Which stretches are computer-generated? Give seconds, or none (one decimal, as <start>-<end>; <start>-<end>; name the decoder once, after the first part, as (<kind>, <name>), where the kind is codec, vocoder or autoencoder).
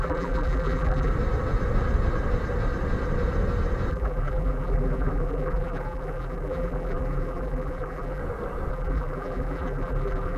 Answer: 0.0-1.1 (vocoder, BigVGAN v2); 3.9-8.2; 8.7-10.4